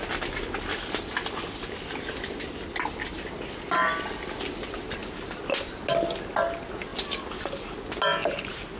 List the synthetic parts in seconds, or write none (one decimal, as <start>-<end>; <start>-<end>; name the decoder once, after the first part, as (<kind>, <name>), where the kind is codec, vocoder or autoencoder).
none